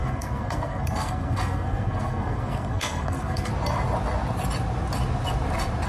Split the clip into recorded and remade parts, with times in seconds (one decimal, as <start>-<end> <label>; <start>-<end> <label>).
0.0-3.5 remade; 3.5-5.9 recorded